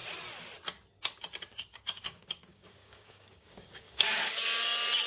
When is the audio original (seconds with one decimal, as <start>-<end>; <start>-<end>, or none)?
0.0-1.5; 4.6-5.1